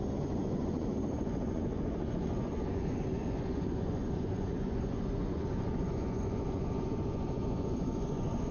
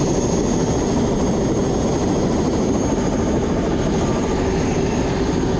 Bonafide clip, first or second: second